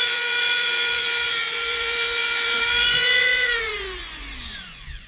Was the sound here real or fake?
fake